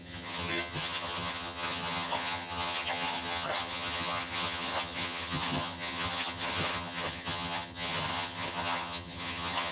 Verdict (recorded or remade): remade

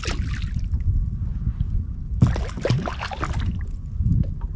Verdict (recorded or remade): recorded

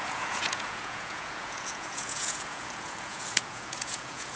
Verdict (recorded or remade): remade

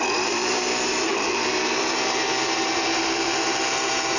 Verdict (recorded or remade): remade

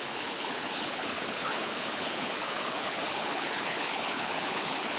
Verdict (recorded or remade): remade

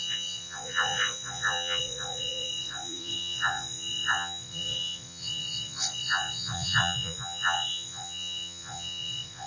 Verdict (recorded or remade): remade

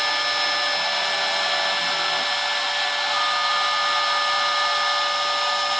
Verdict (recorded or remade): recorded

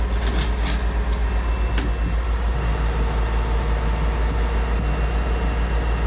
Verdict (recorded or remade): recorded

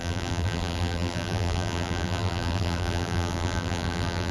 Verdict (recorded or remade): remade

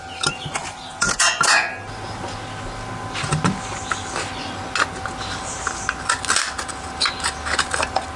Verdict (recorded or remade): recorded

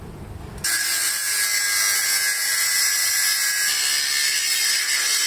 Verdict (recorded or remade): recorded